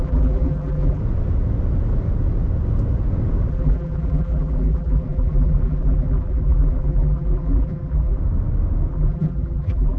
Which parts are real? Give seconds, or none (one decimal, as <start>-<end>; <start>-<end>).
1.0-3.5; 8.2-8.9